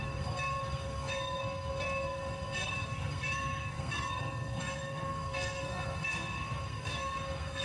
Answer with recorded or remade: remade